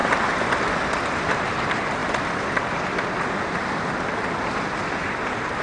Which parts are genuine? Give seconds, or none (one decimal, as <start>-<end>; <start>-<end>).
0.0-5.6